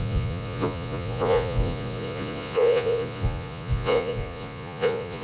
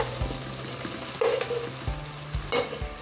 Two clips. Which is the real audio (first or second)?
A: second